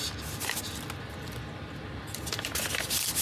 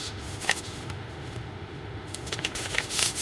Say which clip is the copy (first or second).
second